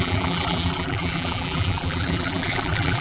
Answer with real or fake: fake